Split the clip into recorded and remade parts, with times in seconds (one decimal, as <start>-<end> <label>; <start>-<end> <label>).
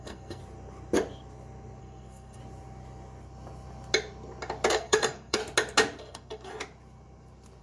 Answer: 0.0-0.4 remade; 0.4-1.8 recorded; 1.8-2.4 remade; 2.4-4.7 recorded; 4.7-5.4 remade; 5.4-6.0 recorded; 6.0-6.5 remade; 6.5-7.6 recorded